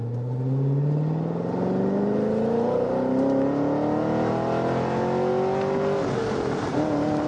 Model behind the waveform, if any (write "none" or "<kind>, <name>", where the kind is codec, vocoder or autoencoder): none